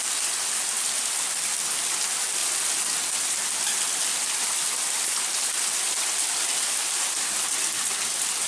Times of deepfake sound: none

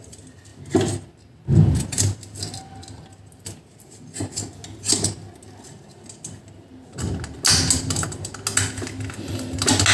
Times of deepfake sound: none

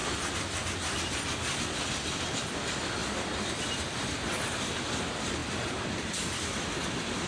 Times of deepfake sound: 2.2-7.3

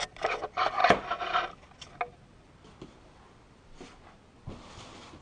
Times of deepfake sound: none

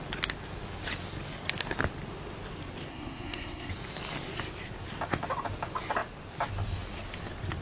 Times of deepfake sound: 2.9-3.7

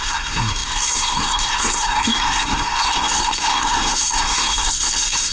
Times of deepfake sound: 0.0-5.3